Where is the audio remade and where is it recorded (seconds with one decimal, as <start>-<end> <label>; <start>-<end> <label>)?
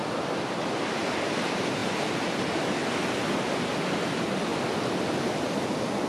0.0-1.8 recorded; 1.8-2.4 remade; 2.4-4.5 recorded; 4.5-6.1 remade